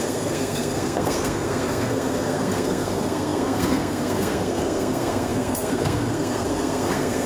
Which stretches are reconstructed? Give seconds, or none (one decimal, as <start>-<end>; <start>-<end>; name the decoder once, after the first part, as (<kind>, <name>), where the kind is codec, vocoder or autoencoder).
0.0-7.3 (codec, SNAC)